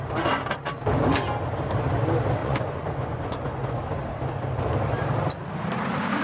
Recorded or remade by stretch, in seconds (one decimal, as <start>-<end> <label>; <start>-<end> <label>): 0.0-2.4 recorded; 2.4-3.8 remade; 3.8-6.2 recorded